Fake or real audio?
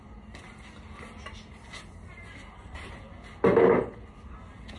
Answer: real